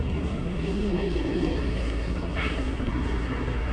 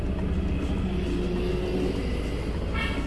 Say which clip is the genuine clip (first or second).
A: second